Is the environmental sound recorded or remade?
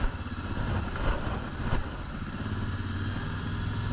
recorded